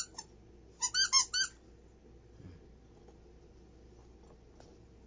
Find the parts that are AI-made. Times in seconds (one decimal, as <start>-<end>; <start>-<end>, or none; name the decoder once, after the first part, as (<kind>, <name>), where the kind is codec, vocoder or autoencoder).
none